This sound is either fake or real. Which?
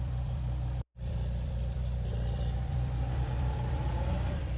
fake